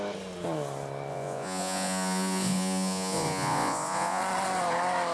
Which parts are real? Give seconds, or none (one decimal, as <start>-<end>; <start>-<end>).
0.0-1.1; 4.2-5.1